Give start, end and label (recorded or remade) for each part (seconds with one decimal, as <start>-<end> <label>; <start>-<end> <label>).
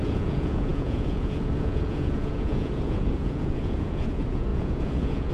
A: 0.0-5.3 remade